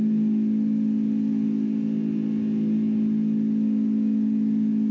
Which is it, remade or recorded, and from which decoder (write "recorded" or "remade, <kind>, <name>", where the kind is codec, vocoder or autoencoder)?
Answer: recorded